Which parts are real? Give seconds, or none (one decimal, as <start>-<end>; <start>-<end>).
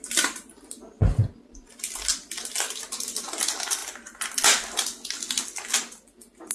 0.0-6.5